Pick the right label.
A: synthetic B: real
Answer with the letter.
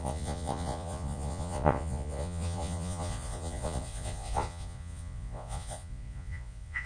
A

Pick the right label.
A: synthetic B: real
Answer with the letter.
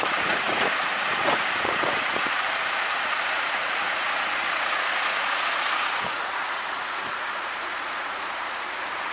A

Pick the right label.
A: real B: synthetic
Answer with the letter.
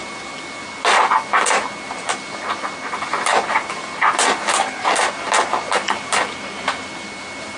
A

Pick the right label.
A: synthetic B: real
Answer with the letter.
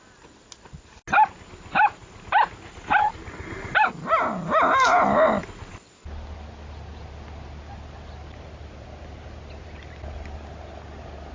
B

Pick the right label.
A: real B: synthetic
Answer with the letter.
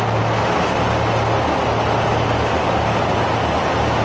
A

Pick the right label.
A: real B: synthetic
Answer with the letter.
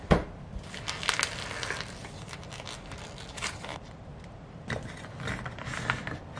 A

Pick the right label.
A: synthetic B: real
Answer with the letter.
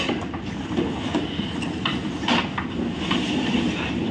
B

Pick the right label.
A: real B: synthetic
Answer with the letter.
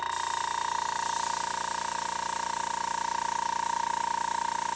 A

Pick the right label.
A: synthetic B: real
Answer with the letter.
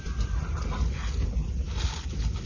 B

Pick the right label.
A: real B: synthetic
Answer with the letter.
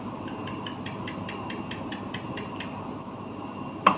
A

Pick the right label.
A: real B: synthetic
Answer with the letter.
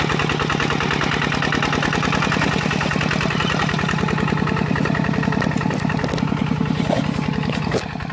A